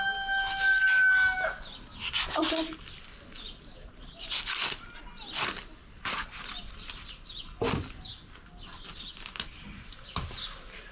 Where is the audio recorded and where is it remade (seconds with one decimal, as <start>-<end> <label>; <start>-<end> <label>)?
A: 0.0-10.9 recorded